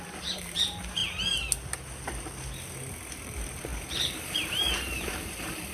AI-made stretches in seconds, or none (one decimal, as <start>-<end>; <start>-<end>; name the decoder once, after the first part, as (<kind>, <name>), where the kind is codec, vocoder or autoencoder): 0.0-1.0 (vocoder, BigVGAN v2); 3.1-5.7